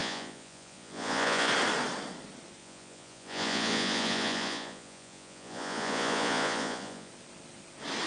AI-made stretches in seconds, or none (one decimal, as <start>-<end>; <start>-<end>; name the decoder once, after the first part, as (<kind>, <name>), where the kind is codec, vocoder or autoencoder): 0.0-1.5 (vocoder, Vocos); 2.6-7.1